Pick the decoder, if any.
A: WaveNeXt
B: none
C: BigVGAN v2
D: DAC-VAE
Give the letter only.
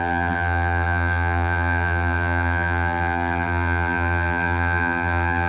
C